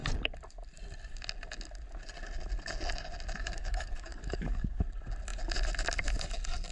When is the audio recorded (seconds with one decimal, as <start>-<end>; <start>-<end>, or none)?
0.0-3.4; 4.8-6.7